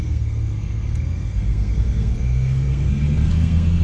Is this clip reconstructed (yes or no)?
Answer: yes